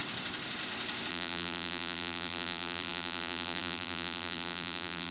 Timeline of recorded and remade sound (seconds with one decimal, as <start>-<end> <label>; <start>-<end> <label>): 0.0-1.1 recorded; 1.1-5.1 remade